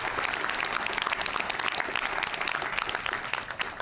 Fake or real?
real